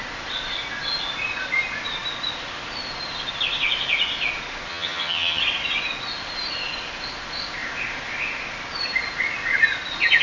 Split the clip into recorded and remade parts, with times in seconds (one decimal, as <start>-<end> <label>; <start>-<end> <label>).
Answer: 0.0-4.7 recorded; 4.7-5.4 remade; 5.4-10.2 recorded